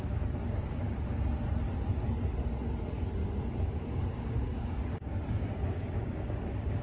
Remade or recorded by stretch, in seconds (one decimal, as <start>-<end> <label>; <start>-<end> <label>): 0.0-0.4 recorded; 0.4-1.2 remade; 1.2-3.2 recorded; 3.2-6.8 remade